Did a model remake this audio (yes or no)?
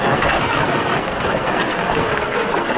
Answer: yes